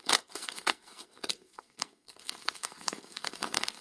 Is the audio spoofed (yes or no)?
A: yes